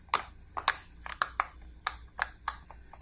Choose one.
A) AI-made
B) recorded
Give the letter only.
B